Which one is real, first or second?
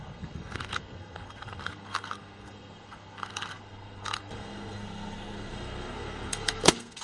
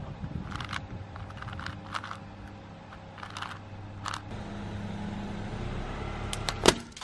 second